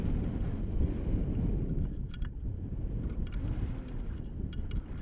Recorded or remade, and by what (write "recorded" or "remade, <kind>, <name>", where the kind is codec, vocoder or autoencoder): recorded